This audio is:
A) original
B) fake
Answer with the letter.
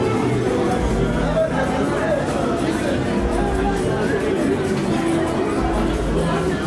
A